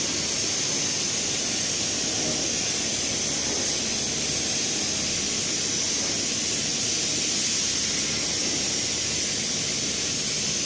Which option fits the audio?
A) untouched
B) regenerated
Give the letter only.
A